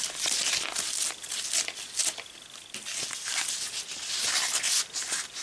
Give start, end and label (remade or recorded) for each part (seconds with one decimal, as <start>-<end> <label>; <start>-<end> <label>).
0.0-5.4 recorded